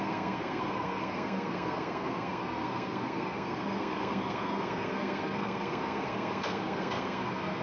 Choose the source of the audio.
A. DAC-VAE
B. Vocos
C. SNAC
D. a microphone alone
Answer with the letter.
C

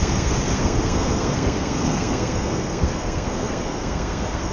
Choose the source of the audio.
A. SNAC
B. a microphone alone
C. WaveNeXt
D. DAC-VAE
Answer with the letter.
A